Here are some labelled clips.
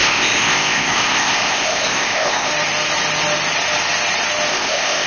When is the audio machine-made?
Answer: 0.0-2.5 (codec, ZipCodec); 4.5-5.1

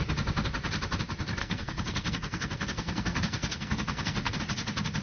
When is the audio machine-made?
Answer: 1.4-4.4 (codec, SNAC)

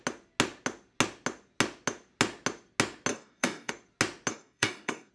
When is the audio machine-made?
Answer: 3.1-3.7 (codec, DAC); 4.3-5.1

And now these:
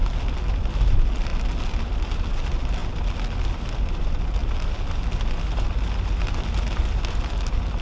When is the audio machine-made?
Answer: none

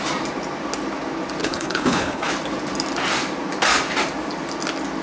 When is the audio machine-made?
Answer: 1.4-2.3 (codec, HILCodec)

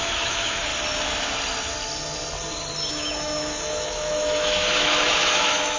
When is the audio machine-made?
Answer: 0.0-0.7 (autoencoder, DAC-VAE); 2.9-5.8